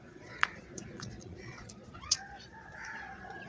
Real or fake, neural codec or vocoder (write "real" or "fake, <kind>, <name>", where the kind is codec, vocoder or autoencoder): fake, vocoder, Vocos